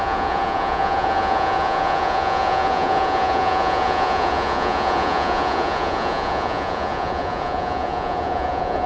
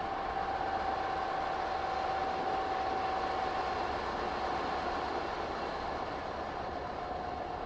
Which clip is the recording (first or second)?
second